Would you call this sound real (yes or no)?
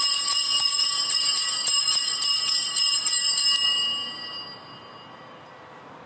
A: yes